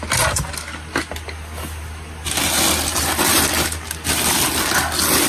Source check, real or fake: real